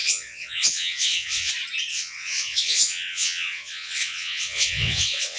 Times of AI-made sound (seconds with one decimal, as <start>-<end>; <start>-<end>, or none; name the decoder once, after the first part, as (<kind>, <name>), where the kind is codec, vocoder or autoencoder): 0.0-1.5 (vocoder, WaveNeXt); 1.9-5.4